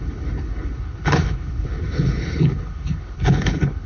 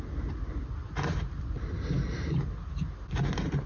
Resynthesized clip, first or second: first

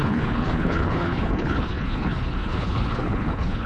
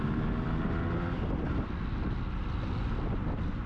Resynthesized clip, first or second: first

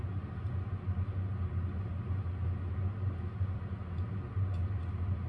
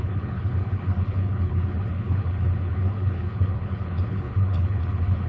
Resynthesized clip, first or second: second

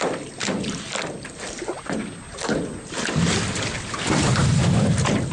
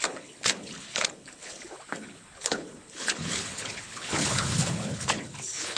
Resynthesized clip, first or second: second